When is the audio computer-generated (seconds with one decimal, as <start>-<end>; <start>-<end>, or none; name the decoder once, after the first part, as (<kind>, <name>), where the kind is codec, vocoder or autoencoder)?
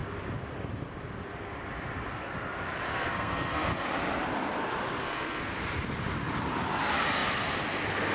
2.9-3.7 (codec, SNAC); 5.0-5.5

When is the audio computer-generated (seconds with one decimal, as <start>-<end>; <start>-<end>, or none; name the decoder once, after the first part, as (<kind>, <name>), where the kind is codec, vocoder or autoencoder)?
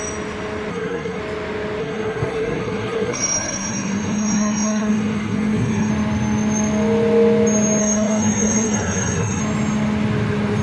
0.7-1.2 (codec, SNAC); 1.8-5.9; 7.8-9.4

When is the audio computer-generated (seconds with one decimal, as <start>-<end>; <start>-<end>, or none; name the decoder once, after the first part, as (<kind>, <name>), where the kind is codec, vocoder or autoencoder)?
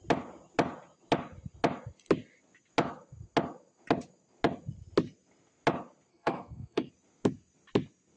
6.1-6.9 (codec, SNAC)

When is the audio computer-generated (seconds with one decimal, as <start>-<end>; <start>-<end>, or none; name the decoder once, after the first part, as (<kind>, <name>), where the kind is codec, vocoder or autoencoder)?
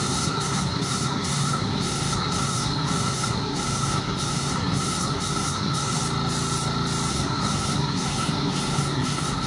0.0-6.0 (codec, SNAC); 7.1-9.5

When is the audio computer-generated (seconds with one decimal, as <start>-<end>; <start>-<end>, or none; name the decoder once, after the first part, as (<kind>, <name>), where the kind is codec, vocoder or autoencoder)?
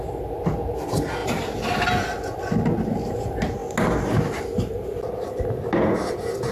none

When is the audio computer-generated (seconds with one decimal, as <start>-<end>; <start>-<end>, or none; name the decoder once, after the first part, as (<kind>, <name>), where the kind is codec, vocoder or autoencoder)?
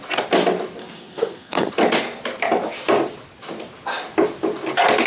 0.8-1.7 (codec, SNAC)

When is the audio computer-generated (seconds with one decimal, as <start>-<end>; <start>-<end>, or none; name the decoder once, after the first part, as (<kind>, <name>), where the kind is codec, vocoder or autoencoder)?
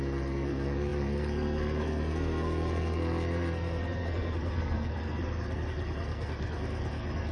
0.0-7.3 (codec, SNAC)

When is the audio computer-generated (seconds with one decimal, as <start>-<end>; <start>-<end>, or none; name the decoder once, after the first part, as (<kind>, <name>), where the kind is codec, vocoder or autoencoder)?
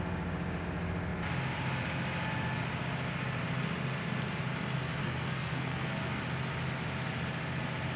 5.0-6.2 (codec, SNAC)